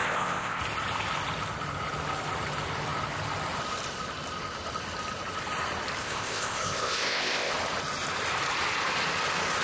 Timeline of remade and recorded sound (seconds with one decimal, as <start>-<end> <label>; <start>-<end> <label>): 0.0-0.6 remade; 0.6-6.0 recorded; 6.0-7.5 remade; 7.5-9.6 recorded